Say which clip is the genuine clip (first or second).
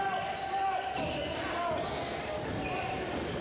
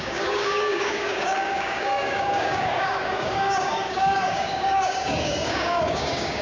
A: first